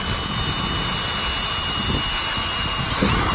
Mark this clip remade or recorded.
recorded